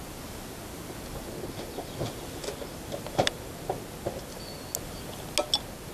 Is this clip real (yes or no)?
yes